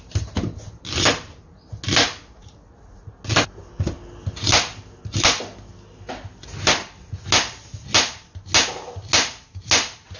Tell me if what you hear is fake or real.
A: real